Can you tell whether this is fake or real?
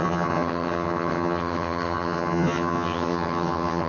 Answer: fake